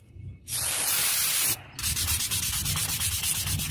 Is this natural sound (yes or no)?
yes